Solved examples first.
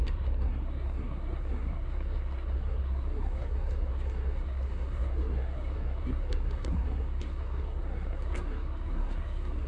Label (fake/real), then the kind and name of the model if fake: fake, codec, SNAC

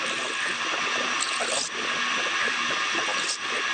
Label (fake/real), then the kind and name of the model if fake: real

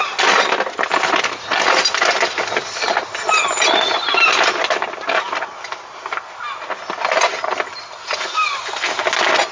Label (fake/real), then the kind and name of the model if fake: real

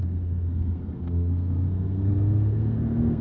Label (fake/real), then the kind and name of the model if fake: fake, codec, SNAC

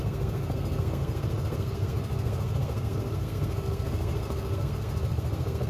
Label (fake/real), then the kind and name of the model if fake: fake, codec, SNAC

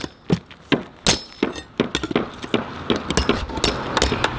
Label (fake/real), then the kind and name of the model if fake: real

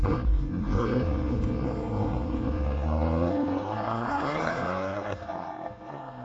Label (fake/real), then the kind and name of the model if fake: fake, codec, SNAC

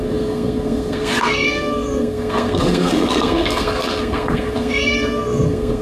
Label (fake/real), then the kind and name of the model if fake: fake, codec, SNAC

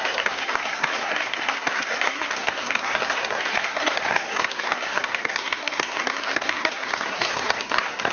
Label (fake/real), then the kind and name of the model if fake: fake, codec, SNAC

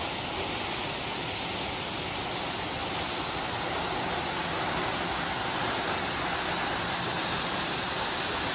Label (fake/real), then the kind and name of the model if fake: real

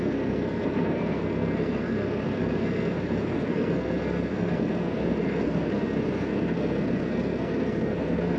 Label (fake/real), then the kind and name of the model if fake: fake, codec, SNAC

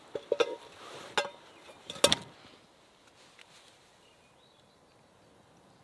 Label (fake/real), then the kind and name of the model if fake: real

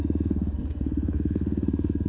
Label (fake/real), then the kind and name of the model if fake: fake, codec, SNAC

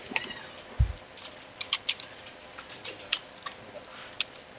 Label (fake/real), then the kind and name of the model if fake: real